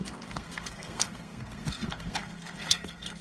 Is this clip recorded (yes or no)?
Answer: no